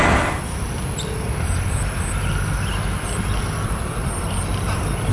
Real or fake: real